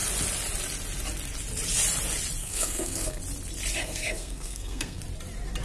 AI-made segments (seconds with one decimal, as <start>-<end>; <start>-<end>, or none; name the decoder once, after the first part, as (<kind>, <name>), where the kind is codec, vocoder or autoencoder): 2.4-3.2 (codec, SNAC); 3.8-5.0